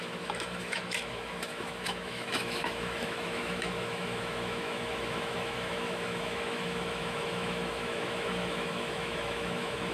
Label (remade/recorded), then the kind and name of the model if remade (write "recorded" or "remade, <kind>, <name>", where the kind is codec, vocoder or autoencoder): remade, autoencoder, DAC-VAE